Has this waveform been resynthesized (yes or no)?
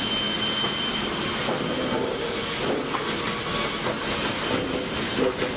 no